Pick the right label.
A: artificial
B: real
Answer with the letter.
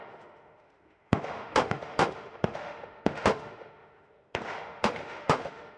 A